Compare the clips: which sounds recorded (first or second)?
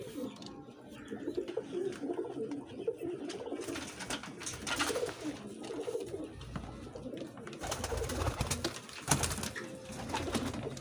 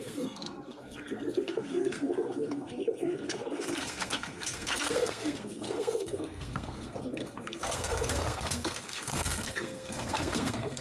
first